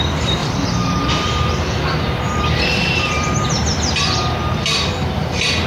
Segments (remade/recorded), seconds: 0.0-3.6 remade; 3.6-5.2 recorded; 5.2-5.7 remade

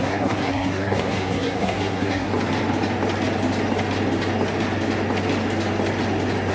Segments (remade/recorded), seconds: 0.0-2.3 remade; 2.3-6.5 recorded